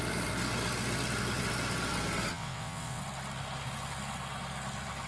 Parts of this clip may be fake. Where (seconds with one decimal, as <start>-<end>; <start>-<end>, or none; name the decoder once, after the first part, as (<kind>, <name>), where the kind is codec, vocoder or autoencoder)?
2.3-3.0 (vocoder, WaveNeXt)